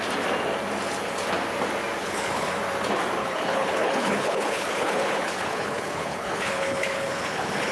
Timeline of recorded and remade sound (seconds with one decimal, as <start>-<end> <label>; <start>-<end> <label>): 0.0-2.0 recorded; 2.0-2.5 remade; 2.5-3.2 recorded; 3.2-7.7 remade